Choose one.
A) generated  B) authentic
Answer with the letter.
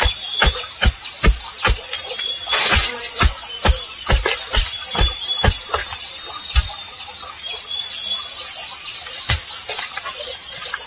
B